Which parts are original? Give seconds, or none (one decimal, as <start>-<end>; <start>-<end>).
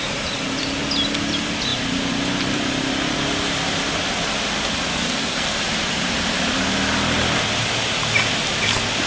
0.0-4.9; 5.6-9.1